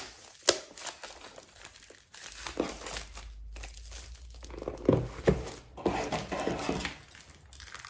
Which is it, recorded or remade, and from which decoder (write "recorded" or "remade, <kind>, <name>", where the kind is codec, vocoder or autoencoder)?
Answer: recorded